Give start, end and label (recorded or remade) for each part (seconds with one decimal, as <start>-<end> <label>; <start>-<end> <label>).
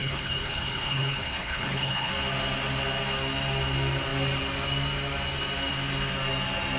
0.0-2.1 remade; 2.1-6.8 recorded